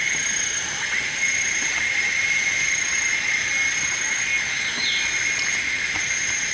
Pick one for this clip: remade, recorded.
recorded